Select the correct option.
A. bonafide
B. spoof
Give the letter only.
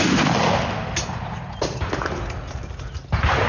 A